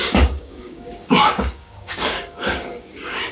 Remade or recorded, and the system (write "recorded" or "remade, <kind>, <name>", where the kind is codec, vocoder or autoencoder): remade, codec, DAC